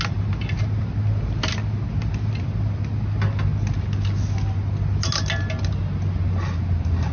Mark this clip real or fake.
real